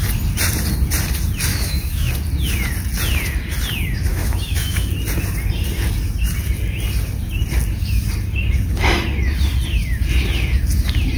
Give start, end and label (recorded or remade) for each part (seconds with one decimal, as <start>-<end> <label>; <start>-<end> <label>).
0.0-1.5 recorded; 1.5-2.1 remade; 2.1-4.1 recorded; 4.1-4.9 remade; 4.9-11.2 recorded